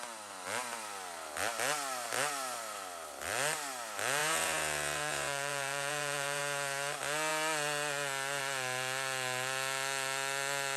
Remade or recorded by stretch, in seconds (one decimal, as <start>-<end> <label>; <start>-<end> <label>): 0.0-4.2 recorded; 4.2-6.4 remade; 6.4-10.8 recorded